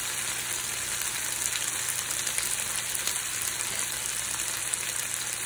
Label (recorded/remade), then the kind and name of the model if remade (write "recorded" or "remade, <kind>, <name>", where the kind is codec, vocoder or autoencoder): recorded